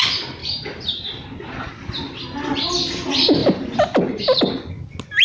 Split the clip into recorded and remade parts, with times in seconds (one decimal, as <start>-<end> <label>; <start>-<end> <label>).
0.0-0.4 recorded; 0.4-1.7 remade; 1.7-3.4 recorded; 3.4-4.4 remade; 4.4-5.2 recorded